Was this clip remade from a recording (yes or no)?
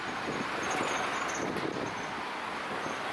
no